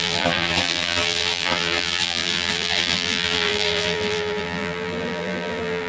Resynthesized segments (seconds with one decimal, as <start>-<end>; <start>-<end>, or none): 0.0-5.9